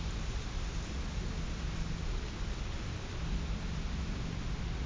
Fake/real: real